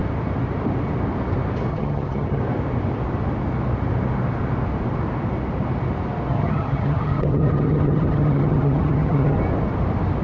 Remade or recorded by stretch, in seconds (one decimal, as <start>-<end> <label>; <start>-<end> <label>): 0.0-1.7 recorded; 1.7-2.4 remade; 2.4-6.3 recorded; 6.3-9.4 remade; 9.4-10.2 recorded